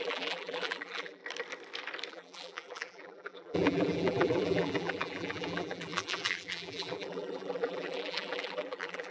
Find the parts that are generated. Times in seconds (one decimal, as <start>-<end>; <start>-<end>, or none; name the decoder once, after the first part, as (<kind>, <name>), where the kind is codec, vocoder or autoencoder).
0.0-1.2 (vocoder, BigVGAN v2); 2.1-9.1